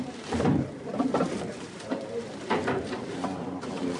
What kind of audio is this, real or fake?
fake